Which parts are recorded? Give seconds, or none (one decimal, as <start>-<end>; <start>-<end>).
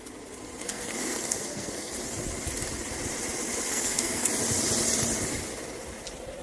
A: 0.0-0.6; 1.9-3.7; 4.3-6.4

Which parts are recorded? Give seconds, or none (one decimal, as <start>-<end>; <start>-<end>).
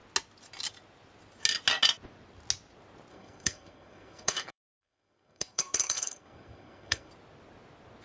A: 0.0-3.1; 7.1-8.0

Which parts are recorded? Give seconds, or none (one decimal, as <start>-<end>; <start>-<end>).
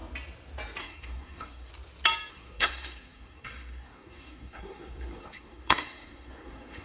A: 0.0-0.8; 1.7-2.3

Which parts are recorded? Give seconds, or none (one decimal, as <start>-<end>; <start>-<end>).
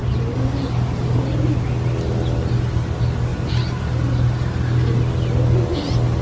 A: 0.0-6.2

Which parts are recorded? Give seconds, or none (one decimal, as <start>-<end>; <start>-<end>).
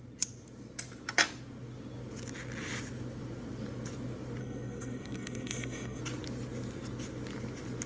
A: 0.0-4.4; 6.0-7.9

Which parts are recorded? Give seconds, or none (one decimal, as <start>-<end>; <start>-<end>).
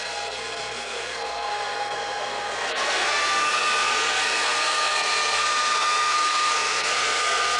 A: none